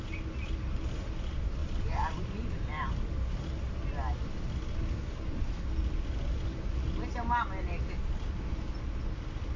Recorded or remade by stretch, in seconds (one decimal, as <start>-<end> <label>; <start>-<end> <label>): 0.0-9.6 recorded